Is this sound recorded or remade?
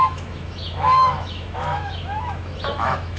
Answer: remade